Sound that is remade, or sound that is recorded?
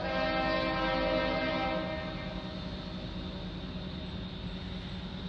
recorded